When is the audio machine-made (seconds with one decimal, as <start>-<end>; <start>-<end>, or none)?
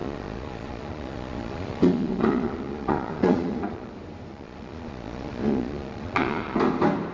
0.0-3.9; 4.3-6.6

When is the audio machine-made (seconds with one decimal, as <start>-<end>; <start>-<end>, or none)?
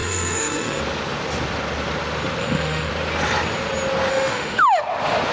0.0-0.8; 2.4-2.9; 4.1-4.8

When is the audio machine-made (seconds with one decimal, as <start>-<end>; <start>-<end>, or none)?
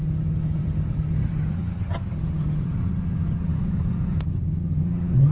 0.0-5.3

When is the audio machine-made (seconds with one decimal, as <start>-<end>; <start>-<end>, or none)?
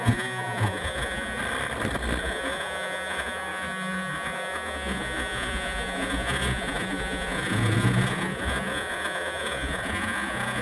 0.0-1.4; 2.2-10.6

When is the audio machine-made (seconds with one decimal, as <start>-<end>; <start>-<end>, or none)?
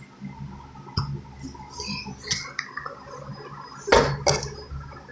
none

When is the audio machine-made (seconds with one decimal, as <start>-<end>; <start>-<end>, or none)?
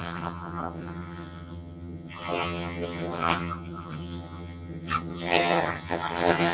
0.0-6.5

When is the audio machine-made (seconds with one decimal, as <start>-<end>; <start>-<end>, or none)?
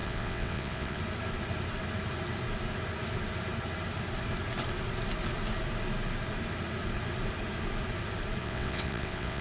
0.0-1.0; 8.4-9.4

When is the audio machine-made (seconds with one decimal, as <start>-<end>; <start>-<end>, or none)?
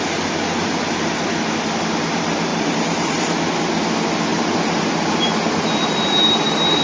2.5-3.2; 4.3-6.8